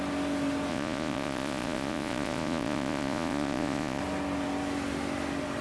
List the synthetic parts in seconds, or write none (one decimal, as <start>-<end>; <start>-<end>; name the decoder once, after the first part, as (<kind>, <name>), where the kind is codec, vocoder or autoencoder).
0.7-4.0 (vocoder, Vocos)